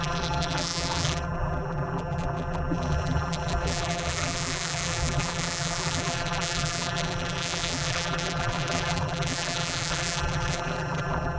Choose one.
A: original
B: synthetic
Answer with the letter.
B